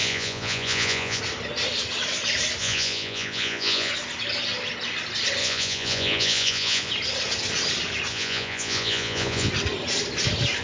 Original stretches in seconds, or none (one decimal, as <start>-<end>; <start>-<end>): 1.2-2.6; 3.9-5.4; 6.9-8.1; 9.5-10.6